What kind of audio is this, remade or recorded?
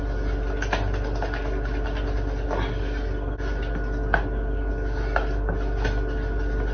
recorded